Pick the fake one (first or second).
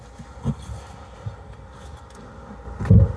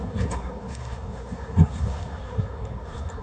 second